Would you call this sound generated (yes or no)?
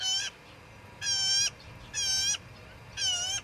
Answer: no